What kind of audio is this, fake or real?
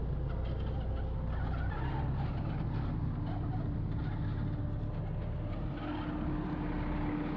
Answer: real